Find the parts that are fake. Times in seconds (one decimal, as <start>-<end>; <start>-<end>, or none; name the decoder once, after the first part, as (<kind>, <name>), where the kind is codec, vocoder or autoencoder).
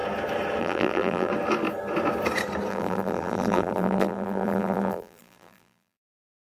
0.6-1.3 (vocoder, BigVGAN v2); 2.7-6.5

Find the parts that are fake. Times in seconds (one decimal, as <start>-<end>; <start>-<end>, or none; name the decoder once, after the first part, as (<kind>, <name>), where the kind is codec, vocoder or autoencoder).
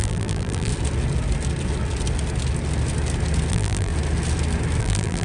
0.0-0.7 (vocoder, BigVGAN v2); 3.5-3.9; 4.8-5.2